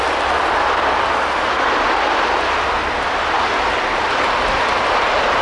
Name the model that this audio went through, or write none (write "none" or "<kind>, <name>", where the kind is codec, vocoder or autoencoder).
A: none